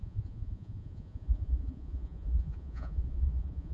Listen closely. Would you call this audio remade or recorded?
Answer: remade